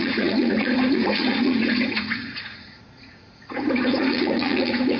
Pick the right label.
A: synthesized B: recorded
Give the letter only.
A